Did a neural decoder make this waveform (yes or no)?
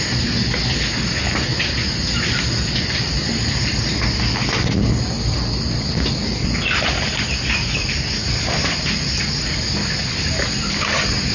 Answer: no